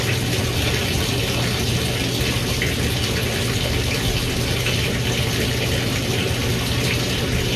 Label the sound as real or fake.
real